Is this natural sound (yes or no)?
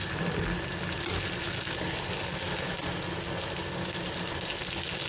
yes